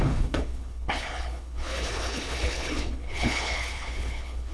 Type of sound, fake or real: fake